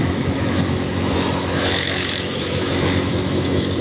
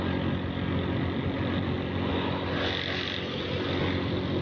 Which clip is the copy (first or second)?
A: first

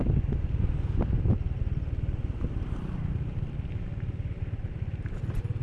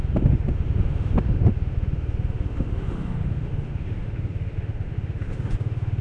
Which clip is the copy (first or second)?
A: second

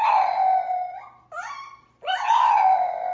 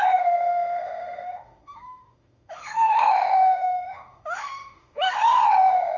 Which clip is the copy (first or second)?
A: second